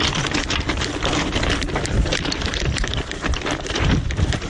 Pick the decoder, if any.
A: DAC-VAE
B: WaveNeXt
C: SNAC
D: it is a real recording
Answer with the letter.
D